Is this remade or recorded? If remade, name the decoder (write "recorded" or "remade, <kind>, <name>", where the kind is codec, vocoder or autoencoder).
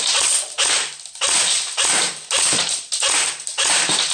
recorded